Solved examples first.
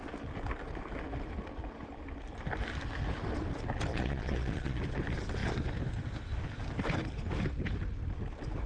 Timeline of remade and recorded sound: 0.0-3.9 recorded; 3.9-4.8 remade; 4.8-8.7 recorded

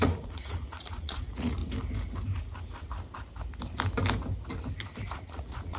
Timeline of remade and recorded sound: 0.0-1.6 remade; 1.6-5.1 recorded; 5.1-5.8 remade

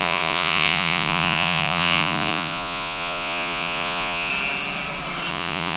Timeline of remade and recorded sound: 0.0-4.3 remade; 4.3-5.3 recorded; 5.3-5.8 remade

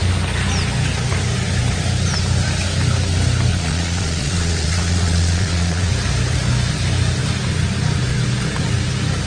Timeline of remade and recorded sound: 0.0-3.5 recorded; 3.5-5.9 remade; 5.9-9.3 recorded

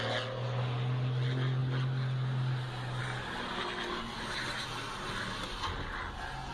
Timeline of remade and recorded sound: 0.0-6.5 recorded

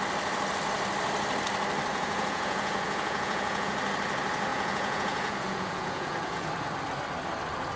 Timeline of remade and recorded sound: 0.0-1.9 recorded; 1.9-3.7 remade; 3.7-4.5 recorded; 4.5-6.5 remade; 6.5-7.8 recorded

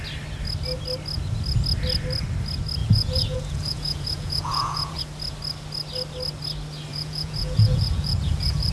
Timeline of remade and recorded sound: 0.0-2.8 recorded; 2.8-5.0 remade; 5.0-6.9 recorded; 6.9-8.7 remade